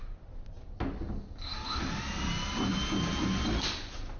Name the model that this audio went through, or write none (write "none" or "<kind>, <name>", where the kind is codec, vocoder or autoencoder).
none